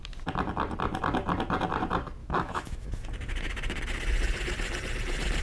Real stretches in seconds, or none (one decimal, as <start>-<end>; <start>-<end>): 0.0-2.2; 3.0-5.4